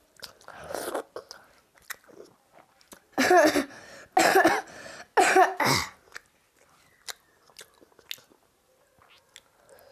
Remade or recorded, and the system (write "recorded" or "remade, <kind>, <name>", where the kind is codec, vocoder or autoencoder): recorded